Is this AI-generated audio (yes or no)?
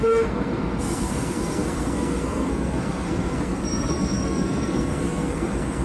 yes